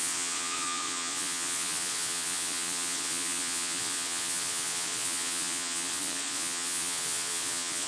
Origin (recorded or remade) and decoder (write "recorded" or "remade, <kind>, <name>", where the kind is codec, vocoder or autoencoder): remade, vocoder, Vocos